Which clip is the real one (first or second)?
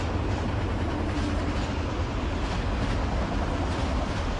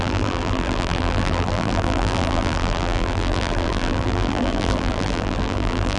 first